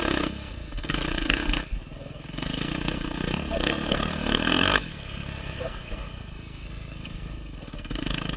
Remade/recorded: remade